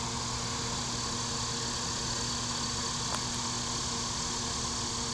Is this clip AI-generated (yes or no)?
no